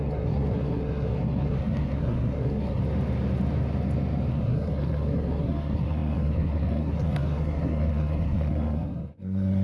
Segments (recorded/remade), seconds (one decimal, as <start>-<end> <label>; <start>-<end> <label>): 0.0-2.8 remade; 2.8-4.3 recorded; 4.3-9.6 remade